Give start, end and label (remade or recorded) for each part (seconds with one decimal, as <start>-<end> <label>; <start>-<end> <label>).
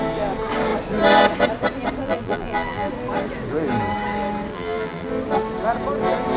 0.0-2.0 recorded; 2.0-2.9 remade; 2.9-4.5 recorded; 4.5-5.1 remade; 5.1-6.4 recorded